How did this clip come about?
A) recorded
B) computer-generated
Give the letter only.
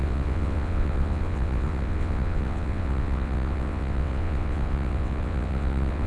B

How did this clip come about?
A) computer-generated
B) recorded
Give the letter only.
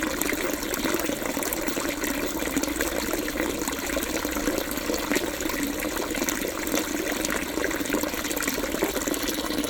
B